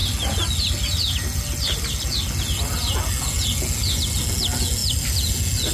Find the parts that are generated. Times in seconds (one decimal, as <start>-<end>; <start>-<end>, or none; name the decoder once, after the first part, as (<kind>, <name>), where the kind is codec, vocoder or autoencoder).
none